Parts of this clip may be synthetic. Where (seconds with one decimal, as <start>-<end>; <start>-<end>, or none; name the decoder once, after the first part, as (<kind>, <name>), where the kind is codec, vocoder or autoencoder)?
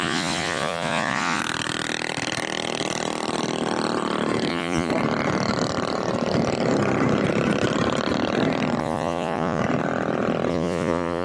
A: 0.0-1.4 (vocoder, Vocos); 4.5-4.9; 8.8-9.6; 10.5-11.2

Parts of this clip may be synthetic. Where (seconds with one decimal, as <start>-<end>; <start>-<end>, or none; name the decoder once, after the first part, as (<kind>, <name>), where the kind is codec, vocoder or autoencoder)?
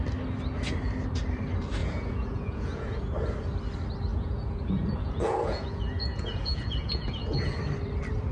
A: 1.8-3.0 (vocoder, Vocos); 4.1-7.6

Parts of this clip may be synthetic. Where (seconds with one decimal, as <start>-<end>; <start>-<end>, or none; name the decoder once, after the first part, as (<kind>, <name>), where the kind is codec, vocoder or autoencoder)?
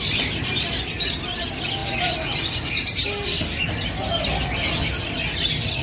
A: none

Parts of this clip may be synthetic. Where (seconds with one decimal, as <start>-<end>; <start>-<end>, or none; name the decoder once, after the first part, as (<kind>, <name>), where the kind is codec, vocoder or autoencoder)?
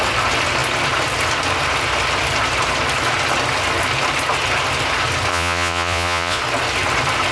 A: 5.3-6.4 (vocoder, Vocos)